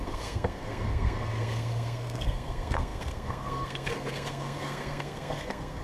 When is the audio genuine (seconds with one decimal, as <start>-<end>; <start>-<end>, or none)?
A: none